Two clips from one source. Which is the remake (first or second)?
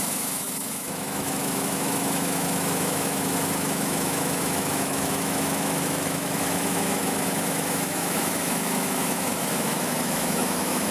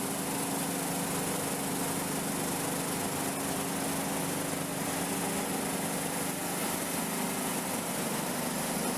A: first